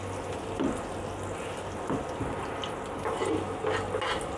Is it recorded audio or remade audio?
recorded